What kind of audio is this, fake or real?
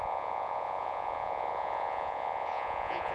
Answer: fake